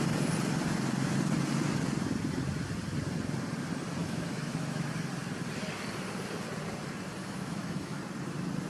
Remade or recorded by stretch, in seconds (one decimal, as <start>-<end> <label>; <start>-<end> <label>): 0.0-4.0 recorded; 4.0-4.9 remade; 4.9-7.2 recorded; 7.2-8.0 remade; 8.0-8.7 recorded